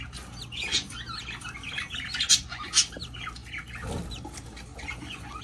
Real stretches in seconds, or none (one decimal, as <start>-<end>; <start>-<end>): 0.0-2.3; 2.9-4.7